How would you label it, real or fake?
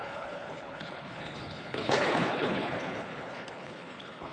fake